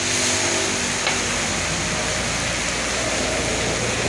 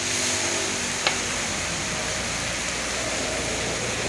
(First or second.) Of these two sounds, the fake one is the second